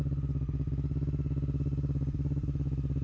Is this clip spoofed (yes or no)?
no